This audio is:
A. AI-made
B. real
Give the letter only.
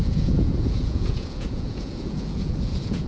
A